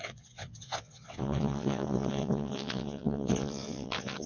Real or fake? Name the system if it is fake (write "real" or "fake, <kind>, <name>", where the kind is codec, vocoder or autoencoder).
fake, vocoder, WaveNeXt